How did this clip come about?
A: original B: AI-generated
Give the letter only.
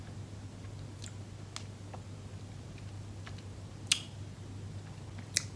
A